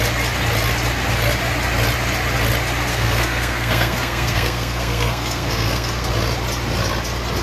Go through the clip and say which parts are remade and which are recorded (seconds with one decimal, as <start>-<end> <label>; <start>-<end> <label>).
0.0-2.9 recorded; 2.9-6.1 remade; 6.1-7.4 recorded